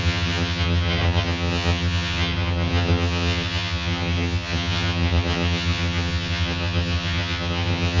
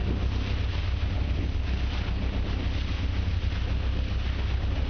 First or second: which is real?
second